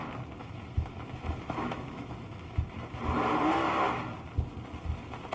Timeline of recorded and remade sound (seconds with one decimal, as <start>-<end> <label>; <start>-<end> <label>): 0.0-0.4 recorded; 0.4-3.0 remade; 3.0-5.3 recorded